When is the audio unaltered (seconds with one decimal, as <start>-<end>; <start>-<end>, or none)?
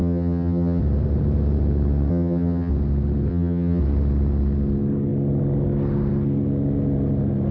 0.8-2.1; 2.7-3.3; 3.8-7.5